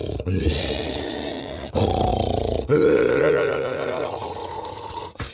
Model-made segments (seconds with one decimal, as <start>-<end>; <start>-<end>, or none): 0.0-5.3